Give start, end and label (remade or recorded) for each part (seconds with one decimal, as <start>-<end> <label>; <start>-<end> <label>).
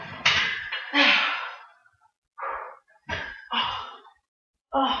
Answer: 0.0-1.8 remade; 1.8-3.6 recorded; 3.6-5.0 remade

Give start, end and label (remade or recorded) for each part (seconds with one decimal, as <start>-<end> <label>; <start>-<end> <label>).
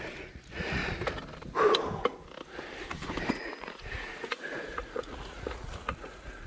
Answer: 0.0-0.8 remade; 0.8-3.3 recorded; 3.3-6.5 remade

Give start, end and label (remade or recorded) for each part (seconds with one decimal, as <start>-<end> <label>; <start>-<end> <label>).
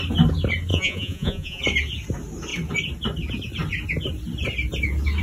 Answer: 0.0-0.7 recorded; 0.7-1.6 remade; 1.6-5.2 recorded